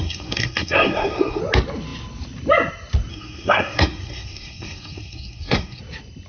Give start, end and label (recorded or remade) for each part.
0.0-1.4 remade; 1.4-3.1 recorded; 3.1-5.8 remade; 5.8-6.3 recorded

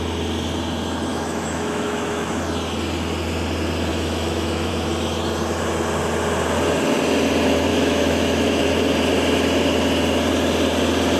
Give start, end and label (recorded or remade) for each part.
0.0-1.1 recorded; 1.1-2.3 remade; 2.3-3.9 recorded; 3.9-4.7 remade; 4.7-7.7 recorded; 7.7-8.6 remade; 8.6-11.2 recorded

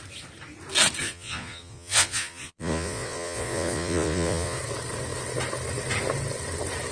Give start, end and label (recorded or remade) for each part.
0.0-1.0 recorded; 1.0-4.6 remade; 4.6-6.9 recorded

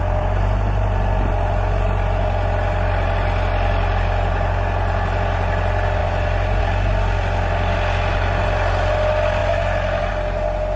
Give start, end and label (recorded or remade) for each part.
0.0-6.0 recorded; 6.0-6.6 remade; 6.6-9.4 recorded; 9.4-10.1 remade; 10.1-10.8 recorded

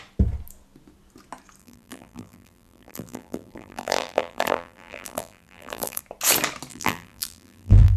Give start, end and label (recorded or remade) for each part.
0.0-1.6 recorded; 1.6-6.0 remade; 6.0-6.7 recorded; 6.7-8.0 remade

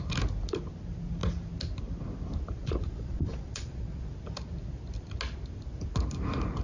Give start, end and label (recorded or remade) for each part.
0.0-2.6 recorded; 2.6-4.1 remade; 4.1-6.6 recorded

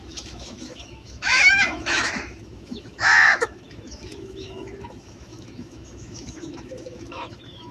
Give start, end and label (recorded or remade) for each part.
0.0-7.7 remade